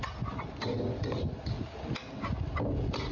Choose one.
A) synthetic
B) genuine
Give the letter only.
B